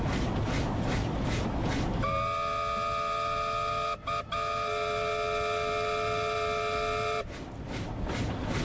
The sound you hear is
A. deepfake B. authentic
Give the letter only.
B